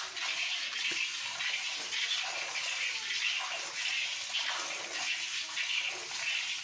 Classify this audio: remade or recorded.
recorded